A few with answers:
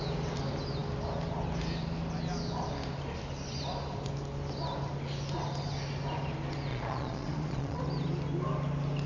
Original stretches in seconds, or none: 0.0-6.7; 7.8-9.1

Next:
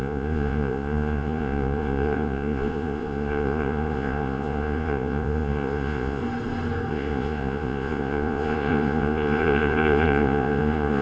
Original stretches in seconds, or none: 6.2-6.9

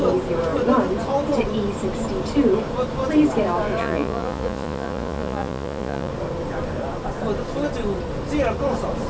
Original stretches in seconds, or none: 0.0-3.8; 6.1-9.1